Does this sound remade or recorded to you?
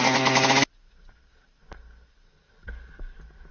recorded